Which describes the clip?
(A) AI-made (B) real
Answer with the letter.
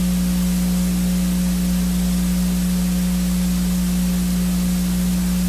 B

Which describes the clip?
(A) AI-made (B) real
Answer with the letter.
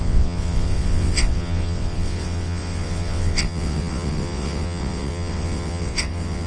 A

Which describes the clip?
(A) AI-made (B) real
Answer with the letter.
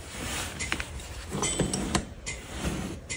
A